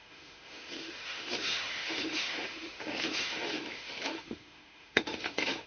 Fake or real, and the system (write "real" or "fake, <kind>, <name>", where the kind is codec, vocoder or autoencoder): fake, autoencoder, DAC-VAE